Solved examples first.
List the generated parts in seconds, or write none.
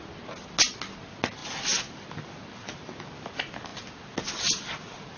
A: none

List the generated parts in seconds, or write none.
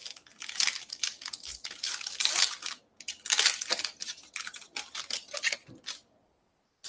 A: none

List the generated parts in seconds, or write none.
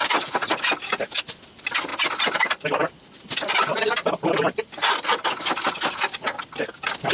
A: none